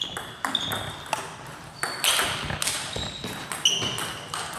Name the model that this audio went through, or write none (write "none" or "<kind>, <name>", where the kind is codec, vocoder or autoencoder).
none